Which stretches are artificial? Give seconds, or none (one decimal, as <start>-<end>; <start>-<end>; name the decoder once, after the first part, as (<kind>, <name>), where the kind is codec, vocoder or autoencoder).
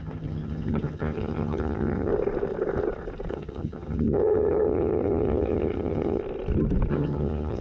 0.0-2.1 (vocoder, HiFi-GAN); 3.3-6.2; 6.9-7.6